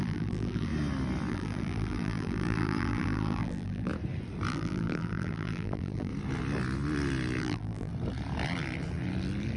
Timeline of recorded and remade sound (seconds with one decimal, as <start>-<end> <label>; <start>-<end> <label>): 0.0-0.7 remade; 0.7-1.3 recorded; 1.3-3.9 remade; 3.9-4.5 recorded; 4.5-6.1 remade; 6.1-7.4 recorded; 7.4-7.9 remade; 7.9-9.6 recorded